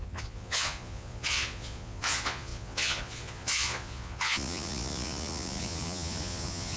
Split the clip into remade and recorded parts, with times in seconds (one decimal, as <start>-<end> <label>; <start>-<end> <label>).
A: 0.0-6.8 remade